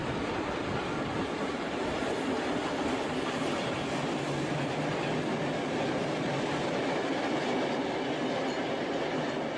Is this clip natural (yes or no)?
yes